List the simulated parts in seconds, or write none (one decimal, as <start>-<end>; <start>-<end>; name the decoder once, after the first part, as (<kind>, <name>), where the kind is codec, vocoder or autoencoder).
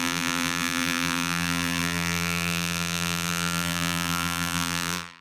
0.0-5.2 (vocoder, BigVGAN v2)